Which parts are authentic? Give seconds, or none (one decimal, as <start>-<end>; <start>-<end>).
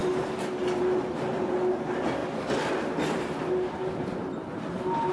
0.0-5.1